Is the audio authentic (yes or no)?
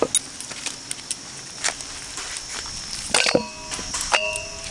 yes